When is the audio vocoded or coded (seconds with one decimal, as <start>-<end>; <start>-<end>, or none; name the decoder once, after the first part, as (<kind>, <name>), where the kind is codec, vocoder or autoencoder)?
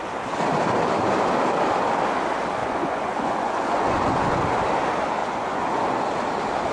2.6-4.4 (vocoder, Vocos); 5.2-6.0